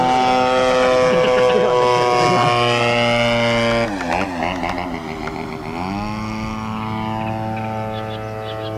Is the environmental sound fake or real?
real